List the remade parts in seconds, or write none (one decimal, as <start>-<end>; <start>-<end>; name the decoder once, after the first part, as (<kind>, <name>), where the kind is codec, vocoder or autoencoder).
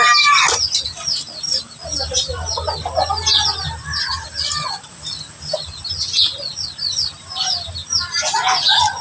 none